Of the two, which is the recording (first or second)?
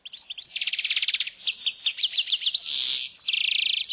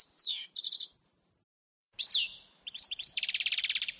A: first